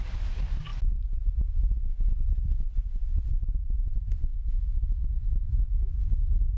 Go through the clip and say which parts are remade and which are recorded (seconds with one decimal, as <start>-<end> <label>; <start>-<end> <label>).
0.0-4.3 recorded; 4.3-5.9 remade; 5.9-6.6 recorded